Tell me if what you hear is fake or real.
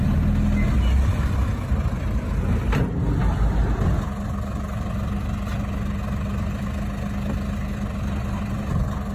real